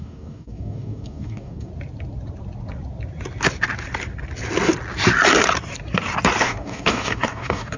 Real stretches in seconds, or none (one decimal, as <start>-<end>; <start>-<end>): 1.7-6.4